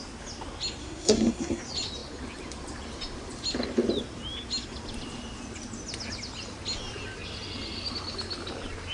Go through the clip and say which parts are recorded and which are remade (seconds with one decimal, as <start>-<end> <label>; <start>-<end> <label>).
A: 0.0-0.8 recorded; 0.8-1.6 remade; 1.6-8.9 recorded